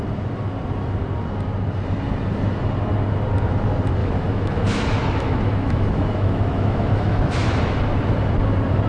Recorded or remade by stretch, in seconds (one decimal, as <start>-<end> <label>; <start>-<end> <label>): 0.0-4.0 recorded; 4.0-7.8 remade; 7.8-8.9 recorded